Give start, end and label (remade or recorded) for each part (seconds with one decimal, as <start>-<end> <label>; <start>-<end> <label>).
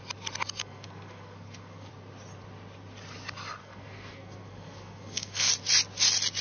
0.0-0.6 recorded; 0.6-1.9 remade; 1.9-3.6 recorded; 3.6-5.5 remade; 5.5-6.4 recorded